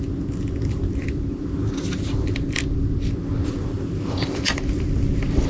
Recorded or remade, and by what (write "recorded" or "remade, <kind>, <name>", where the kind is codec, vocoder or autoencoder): recorded